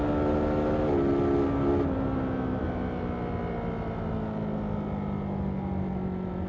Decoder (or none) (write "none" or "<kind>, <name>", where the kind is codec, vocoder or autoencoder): none